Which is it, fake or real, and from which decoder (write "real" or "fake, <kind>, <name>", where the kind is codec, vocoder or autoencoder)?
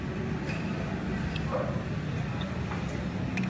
real